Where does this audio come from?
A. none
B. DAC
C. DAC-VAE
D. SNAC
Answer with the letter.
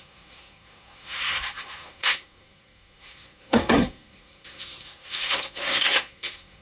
D